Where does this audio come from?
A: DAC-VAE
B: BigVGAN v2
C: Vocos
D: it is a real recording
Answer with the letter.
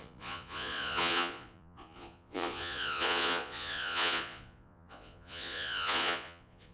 C